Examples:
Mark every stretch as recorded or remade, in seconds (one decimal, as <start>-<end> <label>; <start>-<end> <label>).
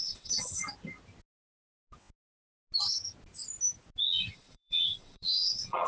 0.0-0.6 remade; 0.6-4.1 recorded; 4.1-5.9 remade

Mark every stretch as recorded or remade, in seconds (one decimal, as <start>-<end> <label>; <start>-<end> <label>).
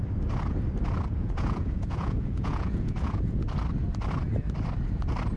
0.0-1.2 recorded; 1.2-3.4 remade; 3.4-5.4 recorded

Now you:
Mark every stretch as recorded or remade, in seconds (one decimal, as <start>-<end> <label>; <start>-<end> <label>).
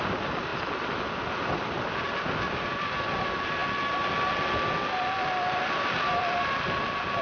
0.0-3.6 remade; 3.6-5.6 recorded; 5.6-7.2 remade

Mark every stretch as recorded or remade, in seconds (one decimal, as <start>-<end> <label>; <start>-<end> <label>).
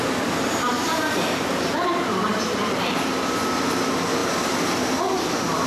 0.0-5.7 remade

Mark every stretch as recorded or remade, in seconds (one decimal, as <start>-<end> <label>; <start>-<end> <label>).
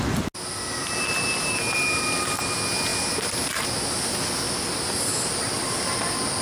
0.0-6.4 recorded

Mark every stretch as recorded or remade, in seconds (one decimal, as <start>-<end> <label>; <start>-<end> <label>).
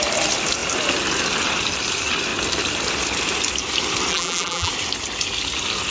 0.0-4.1 recorded; 4.1-4.7 remade; 4.7-5.9 recorded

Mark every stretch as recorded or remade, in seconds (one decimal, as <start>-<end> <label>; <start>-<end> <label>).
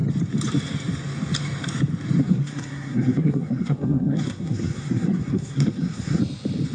0.0-2.2 recorded; 2.2-6.2 remade; 6.2-6.7 recorded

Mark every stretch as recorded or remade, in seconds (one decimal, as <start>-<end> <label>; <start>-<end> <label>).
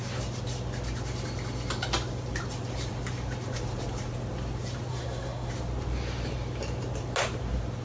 0.0-4.9 recorded; 4.9-5.5 remade; 5.5-7.8 recorded